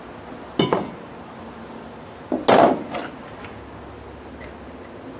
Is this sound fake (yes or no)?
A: no